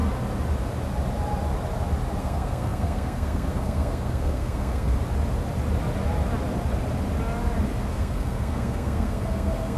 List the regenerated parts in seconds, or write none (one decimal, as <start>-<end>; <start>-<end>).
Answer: 2.2-4.9; 7.9-9.8